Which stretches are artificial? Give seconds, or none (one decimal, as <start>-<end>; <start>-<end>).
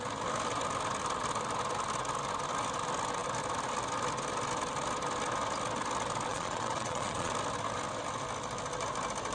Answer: 6.3-7.3